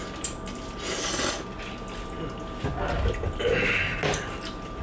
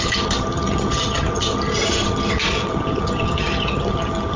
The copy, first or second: second